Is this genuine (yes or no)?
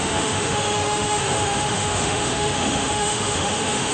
no